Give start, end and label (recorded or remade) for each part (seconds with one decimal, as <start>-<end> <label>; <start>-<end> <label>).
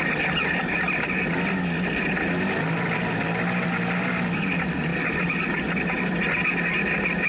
0.0-7.3 recorded